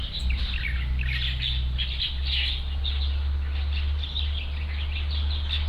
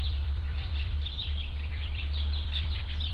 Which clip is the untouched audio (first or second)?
first